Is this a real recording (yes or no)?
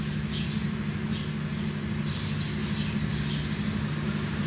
yes